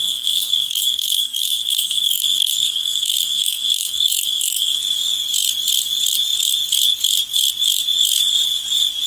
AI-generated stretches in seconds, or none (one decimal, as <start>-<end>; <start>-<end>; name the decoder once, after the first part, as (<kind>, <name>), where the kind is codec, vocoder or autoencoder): 0.0-4.8 (codec, SNAC)